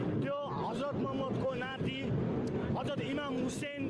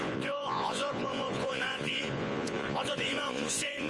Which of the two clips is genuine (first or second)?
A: first